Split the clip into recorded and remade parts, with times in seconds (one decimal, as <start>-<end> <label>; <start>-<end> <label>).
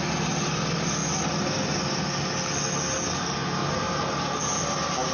0.0-5.1 recorded